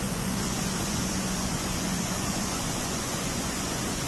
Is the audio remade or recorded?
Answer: remade